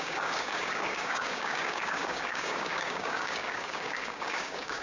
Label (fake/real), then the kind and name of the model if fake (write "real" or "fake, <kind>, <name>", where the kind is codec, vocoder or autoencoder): fake, codec, DAC